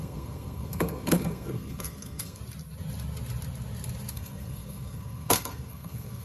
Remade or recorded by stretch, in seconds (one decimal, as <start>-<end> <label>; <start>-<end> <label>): 0.0-2.4 remade; 2.4-4.1 recorded; 4.1-6.2 remade